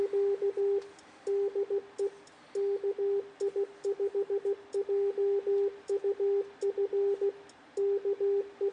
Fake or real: real